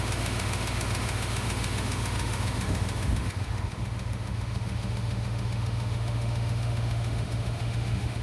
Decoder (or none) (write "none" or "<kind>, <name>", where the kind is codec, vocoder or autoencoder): autoencoder, DAC-VAE